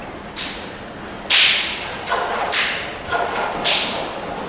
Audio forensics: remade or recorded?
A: recorded